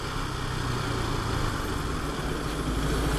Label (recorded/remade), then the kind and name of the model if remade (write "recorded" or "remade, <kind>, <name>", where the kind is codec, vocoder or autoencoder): recorded